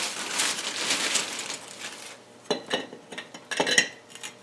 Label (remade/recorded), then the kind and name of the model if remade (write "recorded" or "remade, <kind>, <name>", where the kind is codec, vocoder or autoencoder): recorded